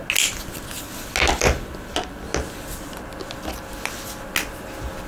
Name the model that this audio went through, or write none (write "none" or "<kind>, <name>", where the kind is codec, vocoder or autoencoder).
none